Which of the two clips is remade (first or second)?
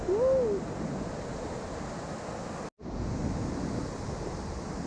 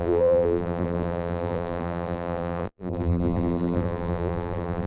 second